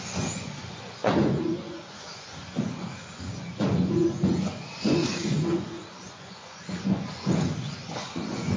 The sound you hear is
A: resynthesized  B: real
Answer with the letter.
A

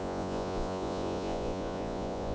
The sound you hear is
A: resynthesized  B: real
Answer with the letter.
A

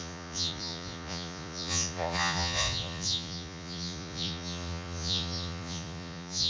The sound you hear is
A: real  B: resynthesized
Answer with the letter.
B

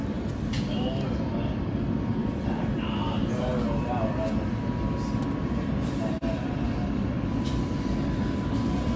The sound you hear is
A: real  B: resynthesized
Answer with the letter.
A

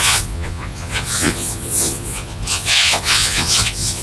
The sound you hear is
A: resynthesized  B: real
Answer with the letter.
A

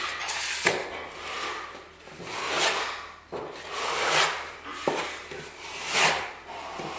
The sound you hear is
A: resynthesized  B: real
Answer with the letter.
B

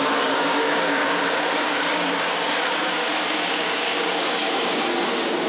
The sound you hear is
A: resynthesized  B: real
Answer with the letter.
A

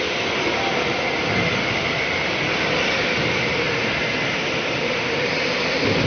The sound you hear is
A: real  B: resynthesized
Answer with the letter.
A